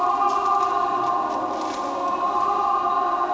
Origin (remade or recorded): recorded